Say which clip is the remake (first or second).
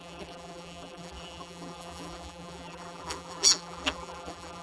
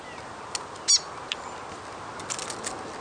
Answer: first